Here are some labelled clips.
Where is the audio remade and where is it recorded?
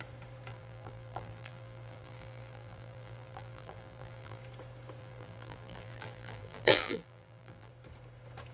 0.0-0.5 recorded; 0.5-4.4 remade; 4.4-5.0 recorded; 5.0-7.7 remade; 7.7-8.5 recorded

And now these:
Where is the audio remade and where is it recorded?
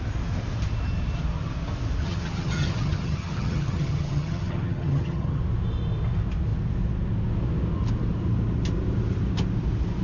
0.0-2.0 recorded; 2.0-5.4 remade; 5.4-10.0 recorded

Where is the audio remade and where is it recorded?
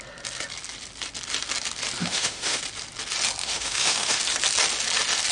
0.0-2.0 recorded; 2.0-2.6 remade; 2.6-3.4 recorded; 3.4-4.2 remade; 4.2-5.3 recorded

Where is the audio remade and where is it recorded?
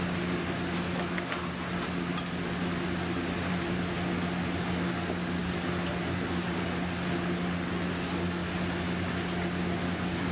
0.0-10.3 recorded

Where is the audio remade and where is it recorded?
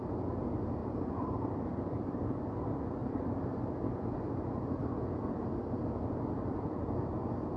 0.0-0.8 recorded; 0.8-2.4 remade; 2.4-3.0 recorded; 3.0-3.6 remade; 3.6-7.6 recorded